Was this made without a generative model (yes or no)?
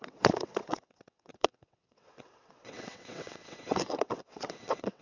no